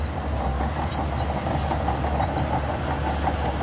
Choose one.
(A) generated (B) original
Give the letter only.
B